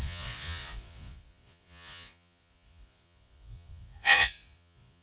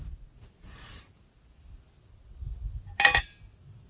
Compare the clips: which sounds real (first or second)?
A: second